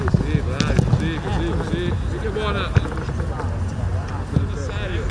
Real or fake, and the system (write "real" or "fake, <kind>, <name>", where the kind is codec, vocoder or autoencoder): real